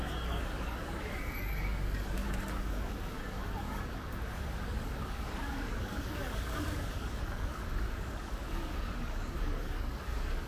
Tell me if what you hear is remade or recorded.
remade